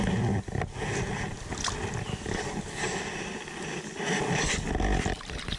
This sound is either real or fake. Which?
real